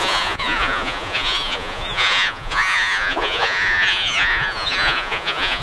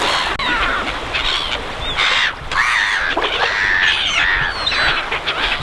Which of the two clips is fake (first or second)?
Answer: first